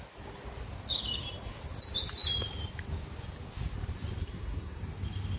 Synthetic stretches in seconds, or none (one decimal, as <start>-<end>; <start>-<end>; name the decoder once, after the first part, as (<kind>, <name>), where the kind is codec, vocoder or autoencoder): 4.2-4.8 (codec, SNAC)